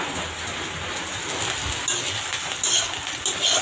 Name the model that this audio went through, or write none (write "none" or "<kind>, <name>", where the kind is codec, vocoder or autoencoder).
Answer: none